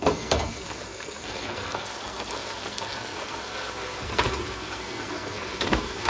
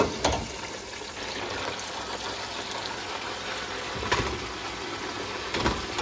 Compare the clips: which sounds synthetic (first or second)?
first